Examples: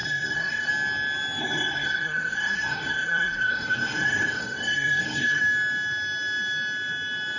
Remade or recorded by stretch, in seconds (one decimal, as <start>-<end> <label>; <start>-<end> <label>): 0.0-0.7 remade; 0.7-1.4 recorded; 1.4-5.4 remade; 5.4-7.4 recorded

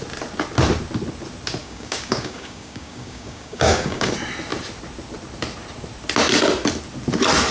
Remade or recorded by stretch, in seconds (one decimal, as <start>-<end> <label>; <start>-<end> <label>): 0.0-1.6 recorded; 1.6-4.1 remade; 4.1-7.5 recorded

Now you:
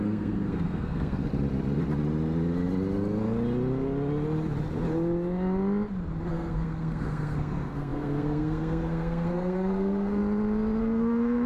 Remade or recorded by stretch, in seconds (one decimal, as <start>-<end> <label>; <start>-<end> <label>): 0.0-1.3 remade; 1.3-6.3 recorded; 6.3-10.2 remade; 10.2-10.8 recorded; 10.8-11.5 remade